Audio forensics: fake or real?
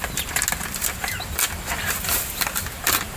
real